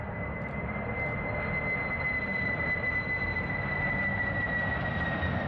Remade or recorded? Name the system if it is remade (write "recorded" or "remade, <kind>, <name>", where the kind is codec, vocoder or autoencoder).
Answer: recorded